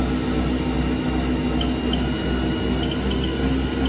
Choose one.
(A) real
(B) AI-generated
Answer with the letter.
A